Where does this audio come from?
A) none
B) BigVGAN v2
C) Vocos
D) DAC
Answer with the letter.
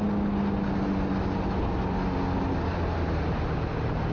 A